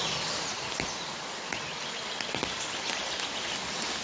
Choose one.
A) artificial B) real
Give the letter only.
B